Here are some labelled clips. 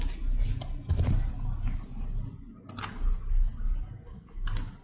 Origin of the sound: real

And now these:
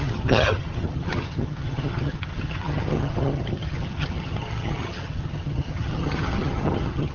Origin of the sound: fake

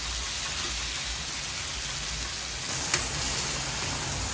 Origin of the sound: real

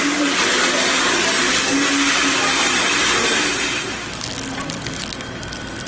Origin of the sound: real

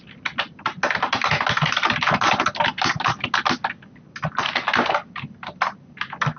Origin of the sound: real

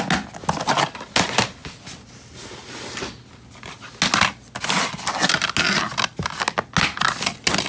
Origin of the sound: real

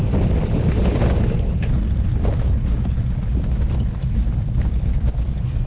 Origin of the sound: real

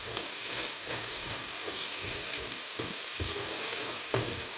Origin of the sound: fake